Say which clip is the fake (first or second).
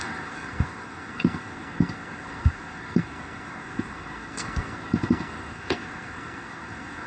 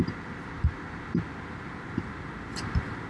first